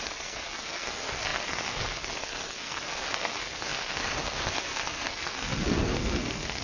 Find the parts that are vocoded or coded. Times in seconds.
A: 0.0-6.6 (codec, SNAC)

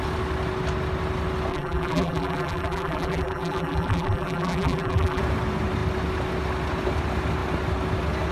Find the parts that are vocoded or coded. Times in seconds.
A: 1.5-5.2 (vocoder, BigVGAN v2)

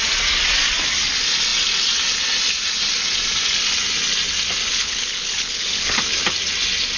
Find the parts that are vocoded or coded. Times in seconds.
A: 4.7-6.0 (codec, HILCodec)

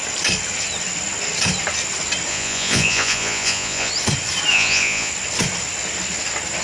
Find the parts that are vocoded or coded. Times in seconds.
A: 2.3-3.9 (vocoder, Vocos); 4.5-5.1